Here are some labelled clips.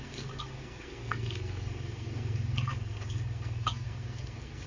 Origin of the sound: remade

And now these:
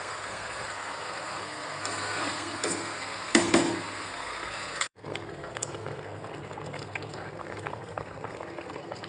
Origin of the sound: remade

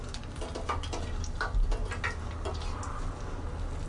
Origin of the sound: recorded